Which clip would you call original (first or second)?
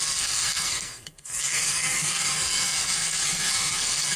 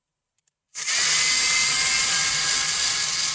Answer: second